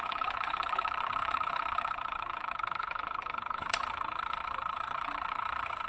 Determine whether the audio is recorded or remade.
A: remade